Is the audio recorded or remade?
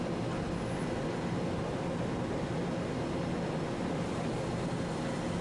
recorded